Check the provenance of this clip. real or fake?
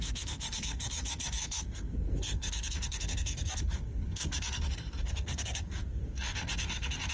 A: fake